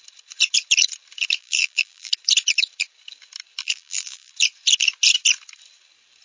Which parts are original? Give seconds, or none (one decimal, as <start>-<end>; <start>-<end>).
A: 0.0-1.4; 2.1-3.6; 4.3-6.2